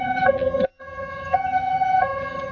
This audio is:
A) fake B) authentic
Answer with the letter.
A